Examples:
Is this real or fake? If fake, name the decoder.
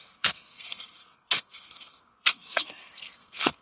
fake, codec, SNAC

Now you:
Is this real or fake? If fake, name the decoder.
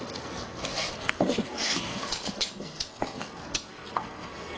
fake, codec, SNAC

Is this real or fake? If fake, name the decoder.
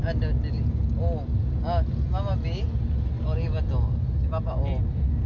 real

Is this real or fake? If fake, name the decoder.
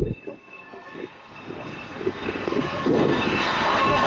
fake, codec, SNAC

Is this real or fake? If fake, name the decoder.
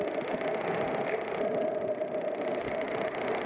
real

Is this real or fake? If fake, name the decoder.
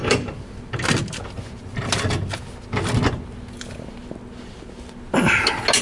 real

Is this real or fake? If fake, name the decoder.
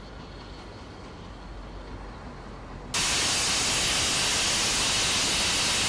real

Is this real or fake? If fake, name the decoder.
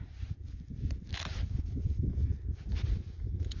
real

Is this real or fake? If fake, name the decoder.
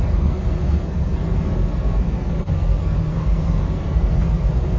fake, codec, SNAC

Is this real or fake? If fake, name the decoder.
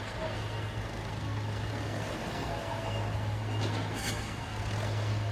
fake, codec, SNAC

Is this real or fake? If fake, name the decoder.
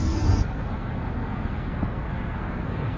fake, codec, SNAC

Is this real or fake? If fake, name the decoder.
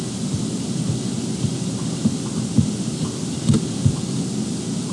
real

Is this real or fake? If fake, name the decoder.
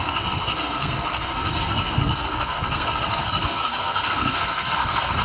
fake, codec, SNAC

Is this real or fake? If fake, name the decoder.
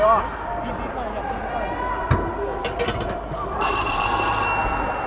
real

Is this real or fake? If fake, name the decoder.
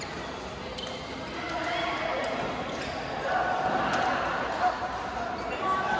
real